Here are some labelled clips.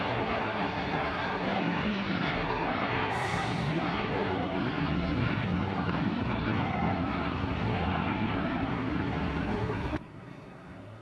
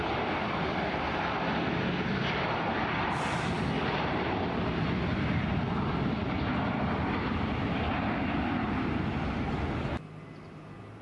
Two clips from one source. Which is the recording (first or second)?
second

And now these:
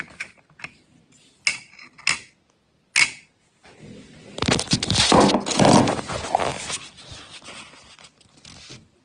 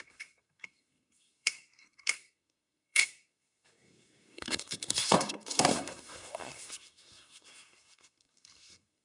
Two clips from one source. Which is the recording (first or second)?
first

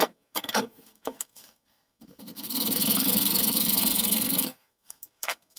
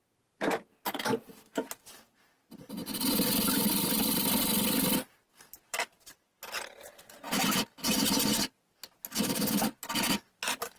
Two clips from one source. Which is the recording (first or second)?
second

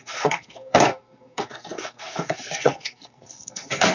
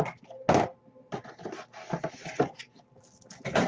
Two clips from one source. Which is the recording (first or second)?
second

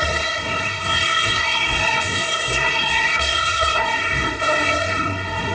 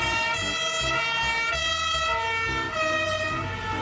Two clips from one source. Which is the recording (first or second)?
second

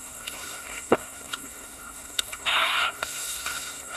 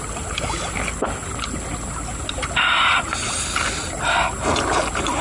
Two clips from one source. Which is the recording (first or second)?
second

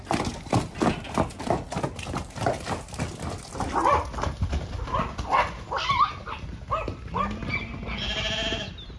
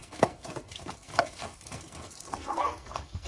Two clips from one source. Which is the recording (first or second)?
first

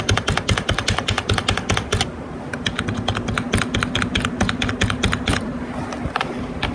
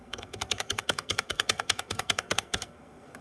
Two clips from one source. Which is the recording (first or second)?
first